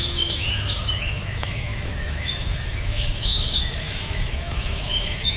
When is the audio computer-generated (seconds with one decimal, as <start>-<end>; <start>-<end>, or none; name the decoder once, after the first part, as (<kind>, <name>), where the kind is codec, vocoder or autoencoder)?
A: 0.0-5.4 (autoencoder, DAC-VAE)